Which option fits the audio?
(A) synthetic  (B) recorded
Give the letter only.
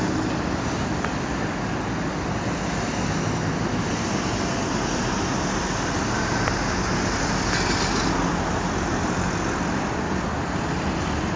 B